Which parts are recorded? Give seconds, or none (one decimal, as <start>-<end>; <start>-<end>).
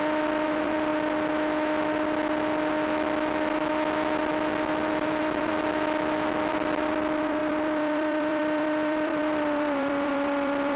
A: 0.9-4.9; 5.5-6.5